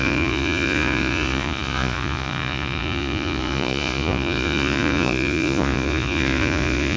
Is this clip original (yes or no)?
no